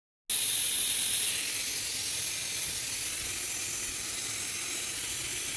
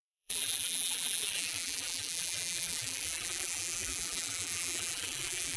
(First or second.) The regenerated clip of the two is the second